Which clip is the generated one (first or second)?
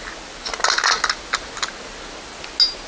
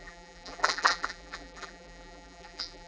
second